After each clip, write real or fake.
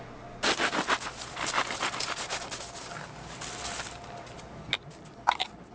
real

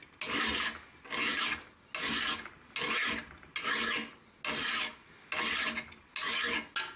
real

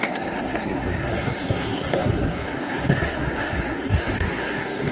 fake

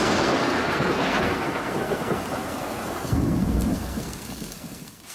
fake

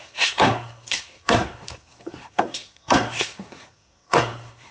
fake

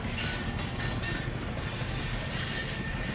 real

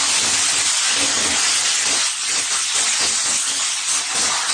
real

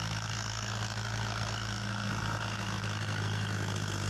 fake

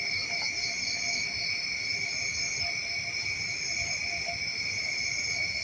real